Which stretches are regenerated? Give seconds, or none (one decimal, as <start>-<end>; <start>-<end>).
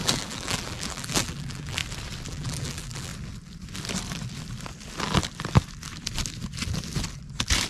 0.0-1.8; 2.3-3.1